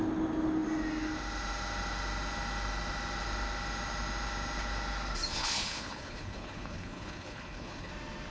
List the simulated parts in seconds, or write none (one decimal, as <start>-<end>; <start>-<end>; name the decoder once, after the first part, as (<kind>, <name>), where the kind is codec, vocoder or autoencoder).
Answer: 5.4-7.9 (codec, HILCodec)